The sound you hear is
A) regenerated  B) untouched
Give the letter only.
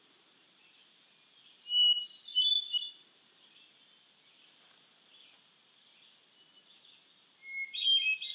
B